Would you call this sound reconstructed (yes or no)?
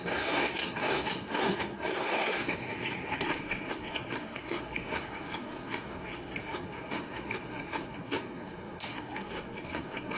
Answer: yes